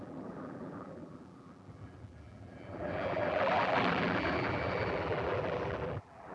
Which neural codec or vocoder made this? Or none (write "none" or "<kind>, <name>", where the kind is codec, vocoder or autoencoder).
vocoder, BigVGAN v2